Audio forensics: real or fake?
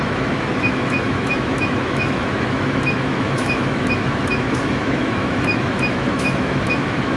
fake